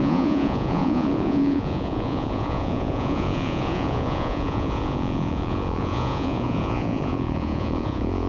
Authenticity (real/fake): fake